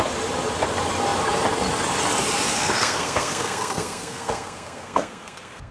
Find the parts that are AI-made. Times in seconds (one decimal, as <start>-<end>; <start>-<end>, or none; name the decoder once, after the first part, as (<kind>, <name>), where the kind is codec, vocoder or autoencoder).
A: 2.5-5.7 (codec, SNAC)

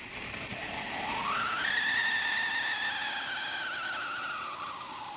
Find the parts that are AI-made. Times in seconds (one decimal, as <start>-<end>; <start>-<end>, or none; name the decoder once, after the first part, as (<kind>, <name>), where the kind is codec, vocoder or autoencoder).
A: none

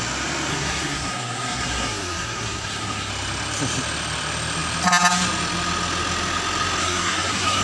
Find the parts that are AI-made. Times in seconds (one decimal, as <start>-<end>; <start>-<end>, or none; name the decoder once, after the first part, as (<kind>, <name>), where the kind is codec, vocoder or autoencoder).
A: 0.5-3.1 (codec, SNAC); 6.8-7.6